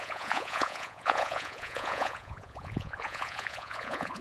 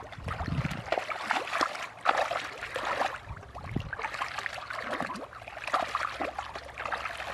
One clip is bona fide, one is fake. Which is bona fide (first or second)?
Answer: second